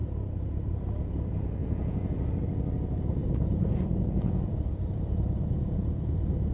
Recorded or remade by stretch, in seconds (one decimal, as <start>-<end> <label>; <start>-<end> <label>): 0.0-1.6 recorded; 1.6-2.4 remade; 2.4-3.2 recorded; 3.2-6.1 remade; 6.1-6.5 recorded